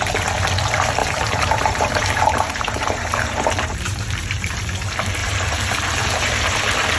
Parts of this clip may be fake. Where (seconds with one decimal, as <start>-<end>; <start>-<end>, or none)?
1.0-4.6; 5.2-6.6